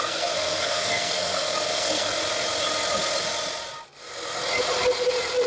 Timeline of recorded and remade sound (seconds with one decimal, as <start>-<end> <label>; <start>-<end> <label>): 0.0-2.2 remade; 2.2-5.5 recorded